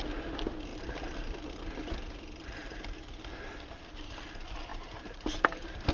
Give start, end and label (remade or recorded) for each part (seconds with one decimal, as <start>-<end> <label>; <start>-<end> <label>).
0.0-0.7 recorded; 0.7-1.4 remade; 1.4-4.7 recorded; 4.7-5.9 remade